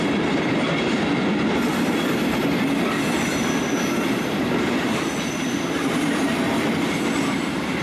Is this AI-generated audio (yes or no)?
yes